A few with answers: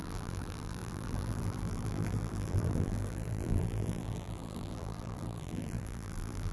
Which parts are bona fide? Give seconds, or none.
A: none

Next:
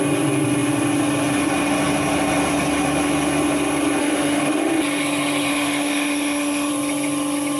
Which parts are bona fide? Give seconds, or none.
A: 0.0-4.0; 4.7-5.5; 6.7-7.6

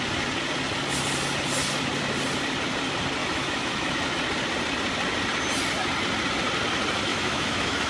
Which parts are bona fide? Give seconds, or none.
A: 0.0-3.2; 4.2-7.1